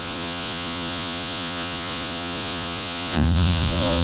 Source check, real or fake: fake